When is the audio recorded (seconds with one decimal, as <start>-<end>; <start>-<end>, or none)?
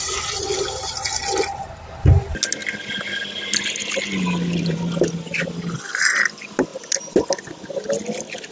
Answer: 0.0-8.5